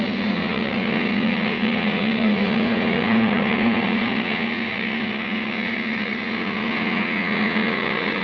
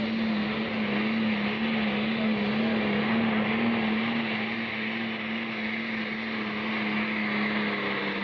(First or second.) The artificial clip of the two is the first